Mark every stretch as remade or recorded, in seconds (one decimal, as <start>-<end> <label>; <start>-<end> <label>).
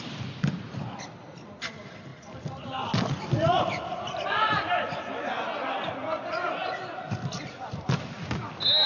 0.0-8.9 recorded